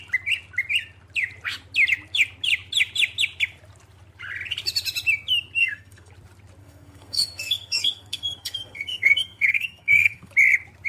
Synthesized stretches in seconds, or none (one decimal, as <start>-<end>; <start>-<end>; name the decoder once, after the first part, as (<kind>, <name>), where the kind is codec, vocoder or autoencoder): 5.6-6.1 (codec, SNAC); 6.6-10.3